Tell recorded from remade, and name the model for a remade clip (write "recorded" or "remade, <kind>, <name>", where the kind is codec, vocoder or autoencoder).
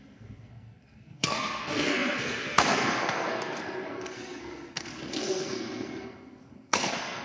remade, codec, SNAC